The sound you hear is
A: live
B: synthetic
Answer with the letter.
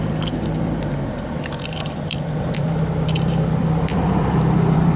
B